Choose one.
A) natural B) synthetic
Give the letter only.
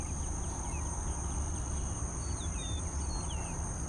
A